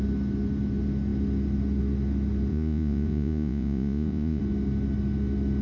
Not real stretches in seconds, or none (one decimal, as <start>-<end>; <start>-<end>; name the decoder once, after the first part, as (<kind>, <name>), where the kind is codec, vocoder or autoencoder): 2.5-4.4 (vocoder, Vocos)